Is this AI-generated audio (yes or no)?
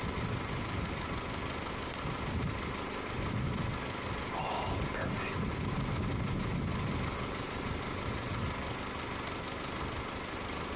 no